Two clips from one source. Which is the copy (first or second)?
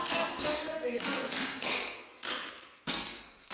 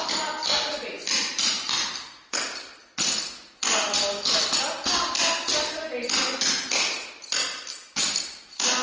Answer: first